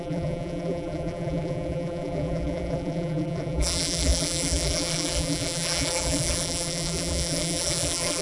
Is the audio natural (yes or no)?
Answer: no